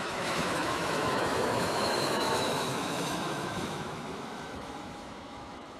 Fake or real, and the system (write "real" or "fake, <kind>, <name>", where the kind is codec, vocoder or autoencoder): fake, autoencoder, DAC-VAE